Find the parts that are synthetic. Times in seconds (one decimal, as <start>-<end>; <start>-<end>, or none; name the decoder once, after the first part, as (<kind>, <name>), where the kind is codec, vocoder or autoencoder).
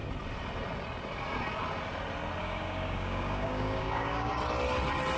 2.4-4.3 (codec, DAC)